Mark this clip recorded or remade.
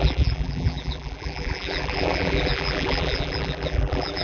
remade